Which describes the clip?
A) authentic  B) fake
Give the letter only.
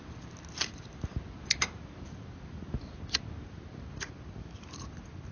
A